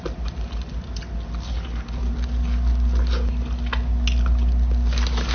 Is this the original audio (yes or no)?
yes